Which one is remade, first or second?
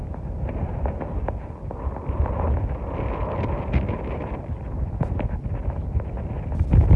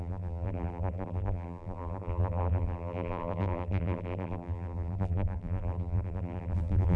second